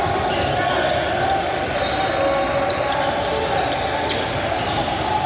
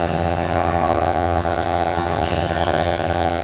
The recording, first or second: first